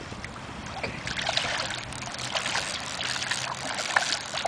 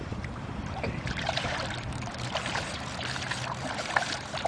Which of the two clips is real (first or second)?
first